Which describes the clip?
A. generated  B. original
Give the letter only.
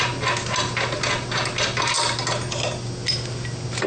B